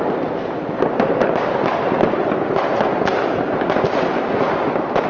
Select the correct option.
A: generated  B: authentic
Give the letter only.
B